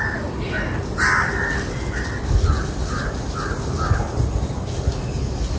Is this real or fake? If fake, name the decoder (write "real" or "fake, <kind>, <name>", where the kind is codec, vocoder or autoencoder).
real